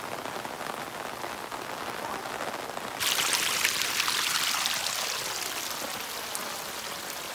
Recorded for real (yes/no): yes